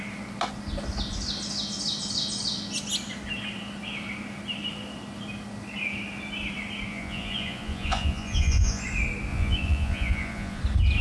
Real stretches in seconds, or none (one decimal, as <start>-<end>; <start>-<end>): 0.0-6.9; 8.8-9.3; 10.6-11.0